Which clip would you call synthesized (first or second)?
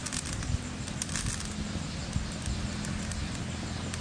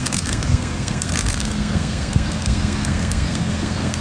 second